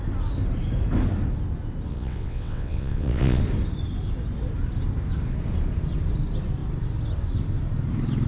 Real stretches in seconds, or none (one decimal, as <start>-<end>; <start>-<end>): 0.0-1.9; 3.4-8.3